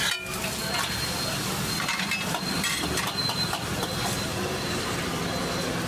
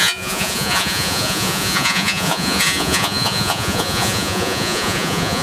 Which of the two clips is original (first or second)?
first